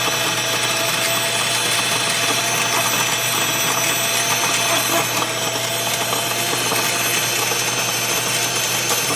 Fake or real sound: real